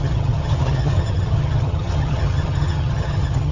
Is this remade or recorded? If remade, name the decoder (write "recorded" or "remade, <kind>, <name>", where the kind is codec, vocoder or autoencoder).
remade, vocoder, HiFi-GAN